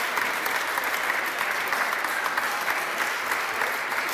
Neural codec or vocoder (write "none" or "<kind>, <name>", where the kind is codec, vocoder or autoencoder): none